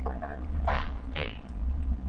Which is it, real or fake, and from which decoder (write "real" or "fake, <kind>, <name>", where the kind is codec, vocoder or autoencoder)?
fake, vocoder, Vocos